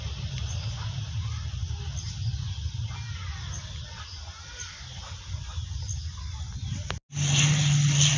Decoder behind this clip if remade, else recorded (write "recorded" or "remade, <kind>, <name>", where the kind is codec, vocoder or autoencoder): recorded